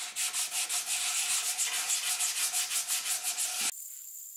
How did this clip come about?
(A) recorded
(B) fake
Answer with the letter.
A